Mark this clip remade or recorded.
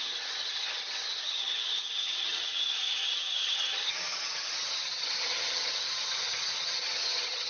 remade